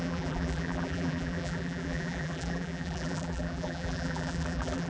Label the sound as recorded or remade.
remade